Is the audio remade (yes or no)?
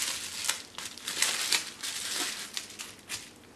no